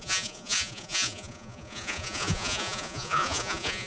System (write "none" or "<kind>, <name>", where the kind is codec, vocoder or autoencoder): vocoder, Vocos